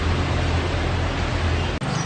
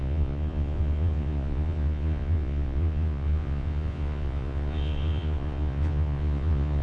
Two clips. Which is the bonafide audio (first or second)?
first